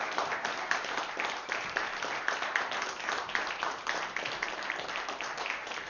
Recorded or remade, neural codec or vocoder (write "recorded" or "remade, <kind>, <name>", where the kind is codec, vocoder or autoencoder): remade, vocoder, BigVGAN v2